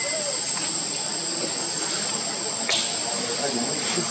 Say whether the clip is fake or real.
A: real